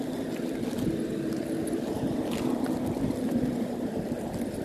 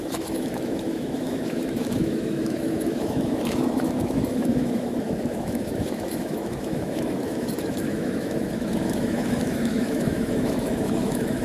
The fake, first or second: second